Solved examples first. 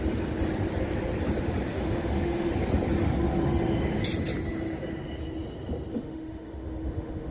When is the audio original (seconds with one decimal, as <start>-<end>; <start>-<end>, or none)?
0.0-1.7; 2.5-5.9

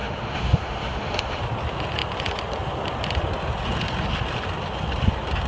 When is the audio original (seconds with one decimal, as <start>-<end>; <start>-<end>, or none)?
1.4-5.5

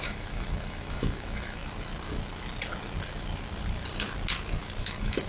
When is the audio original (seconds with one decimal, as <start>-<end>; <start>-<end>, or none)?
1.6-4.8